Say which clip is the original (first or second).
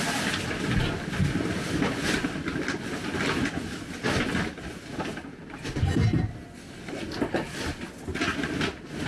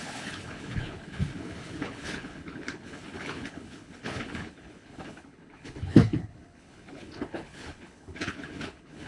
first